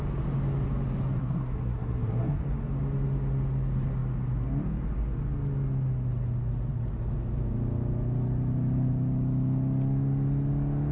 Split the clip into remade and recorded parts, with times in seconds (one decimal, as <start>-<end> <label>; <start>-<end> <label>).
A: 0.0-1.2 recorded; 1.2-2.4 remade; 2.4-10.9 recorded